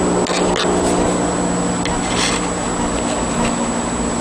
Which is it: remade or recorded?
recorded